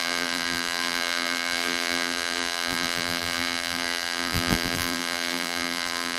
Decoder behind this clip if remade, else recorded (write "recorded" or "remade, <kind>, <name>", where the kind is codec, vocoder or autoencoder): remade, vocoder, BigVGAN v2